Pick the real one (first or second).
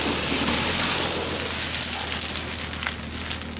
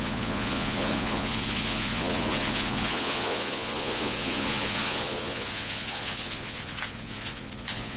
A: first